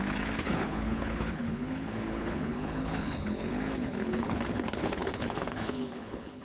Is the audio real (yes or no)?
no